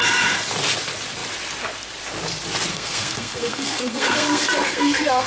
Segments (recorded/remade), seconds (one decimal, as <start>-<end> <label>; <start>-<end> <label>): 0.0-2.7 recorded; 2.7-5.3 remade